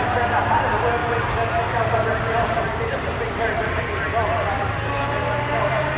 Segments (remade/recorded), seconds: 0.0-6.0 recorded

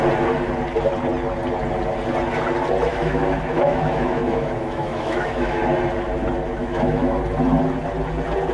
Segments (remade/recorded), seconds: 0.0-2.9 recorded; 2.9-5.6 remade; 5.6-6.6 recorded; 6.6-7.2 remade; 7.2-8.5 recorded

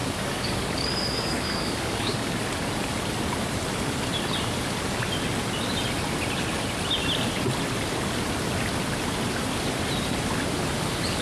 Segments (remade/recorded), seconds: 0.0-2.3 remade; 2.3-11.2 recorded

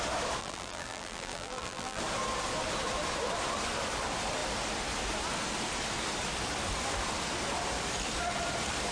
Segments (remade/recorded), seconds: 0.0-0.4 recorded; 0.4-2.0 remade; 2.0-8.9 recorded

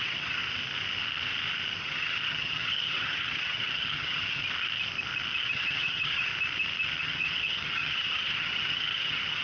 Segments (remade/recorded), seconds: 0.0-0.4 remade; 0.4-1.8 recorded; 1.8-4.4 remade; 4.4-5.4 recorded; 5.4-6.3 remade; 6.3-7.0 recorded; 7.0-9.4 remade

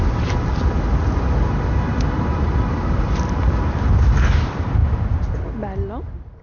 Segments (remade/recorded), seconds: 0.0-2.3 recorded; 2.3-3.8 remade; 3.8-6.4 recorded

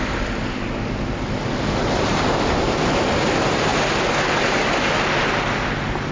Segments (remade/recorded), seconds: 0.0-6.1 recorded